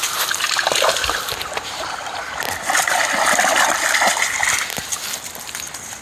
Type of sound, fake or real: real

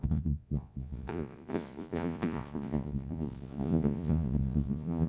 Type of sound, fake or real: fake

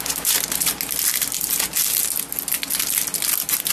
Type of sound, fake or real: real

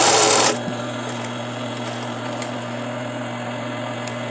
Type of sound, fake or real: real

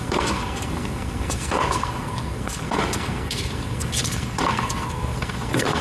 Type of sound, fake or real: fake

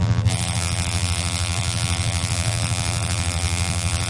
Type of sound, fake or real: fake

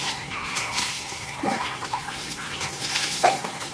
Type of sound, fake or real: fake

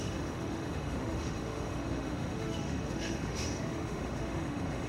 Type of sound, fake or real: fake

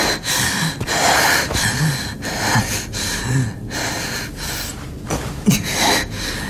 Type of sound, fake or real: real